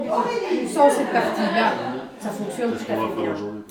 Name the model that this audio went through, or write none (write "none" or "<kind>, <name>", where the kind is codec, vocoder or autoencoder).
none